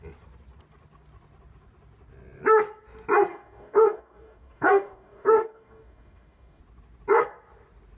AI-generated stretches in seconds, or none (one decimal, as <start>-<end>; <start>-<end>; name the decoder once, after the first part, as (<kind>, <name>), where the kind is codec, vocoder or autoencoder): 3.3-6.6 (codec, DAC)